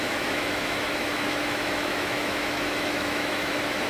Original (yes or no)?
no